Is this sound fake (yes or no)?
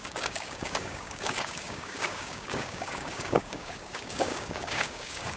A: yes